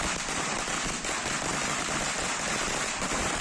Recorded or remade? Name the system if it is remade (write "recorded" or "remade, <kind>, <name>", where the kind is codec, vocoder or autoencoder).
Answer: remade, vocoder, BigVGAN v2